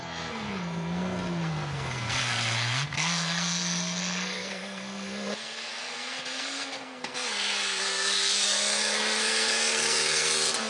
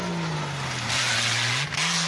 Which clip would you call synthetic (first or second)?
first